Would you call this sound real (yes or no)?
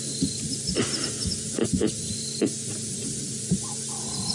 yes